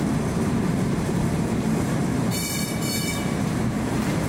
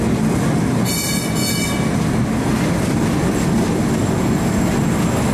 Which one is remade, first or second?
first